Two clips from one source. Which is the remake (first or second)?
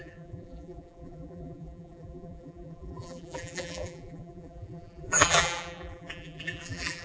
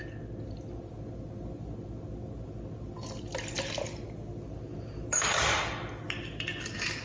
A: first